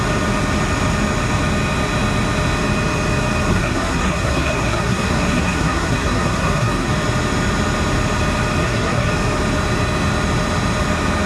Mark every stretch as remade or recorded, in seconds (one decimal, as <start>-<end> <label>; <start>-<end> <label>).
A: 0.0-3.5 recorded; 3.5-6.9 remade; 6.9-8.6 recorded; 8.6-9.1 remade; 9.1-11.3 recorded